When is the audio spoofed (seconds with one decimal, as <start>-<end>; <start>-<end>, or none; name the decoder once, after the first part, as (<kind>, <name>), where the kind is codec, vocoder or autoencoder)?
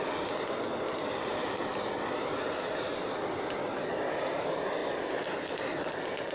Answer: 1.3-3.1 (vocoder, BigVGAN v2)